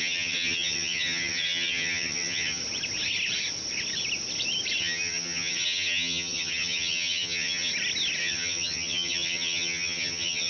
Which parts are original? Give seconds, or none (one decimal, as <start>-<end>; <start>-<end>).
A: 2.6-4.8; 7.7-8.2